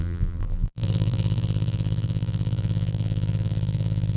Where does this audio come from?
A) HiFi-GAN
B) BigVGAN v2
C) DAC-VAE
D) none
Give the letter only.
B